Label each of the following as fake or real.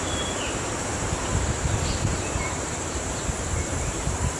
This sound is fake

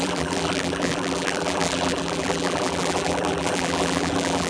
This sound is fake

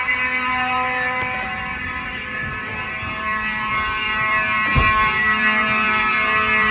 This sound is fake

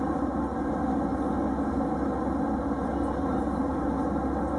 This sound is real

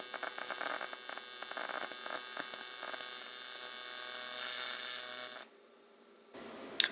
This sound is real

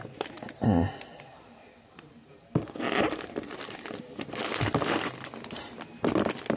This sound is fake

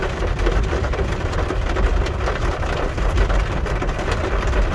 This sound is fake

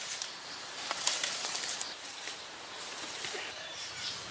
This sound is fake